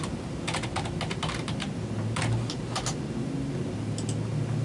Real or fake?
real